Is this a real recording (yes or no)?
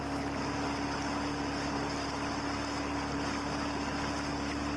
yes